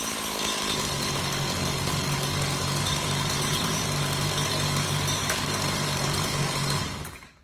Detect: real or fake fake